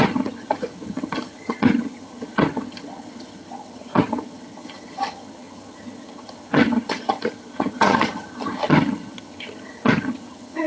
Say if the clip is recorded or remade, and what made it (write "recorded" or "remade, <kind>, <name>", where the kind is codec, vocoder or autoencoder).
remade, vocoder, HiFi-GAN